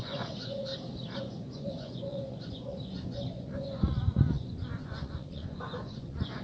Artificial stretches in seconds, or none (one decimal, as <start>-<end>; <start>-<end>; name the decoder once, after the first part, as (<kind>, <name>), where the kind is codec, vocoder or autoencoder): 0.0-0.7 (vocoder, Vocos); 1.2-6.4